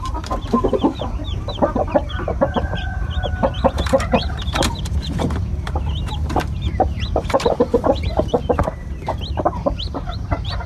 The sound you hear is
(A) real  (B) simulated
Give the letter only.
B